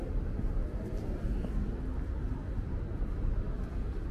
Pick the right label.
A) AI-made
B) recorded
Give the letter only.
B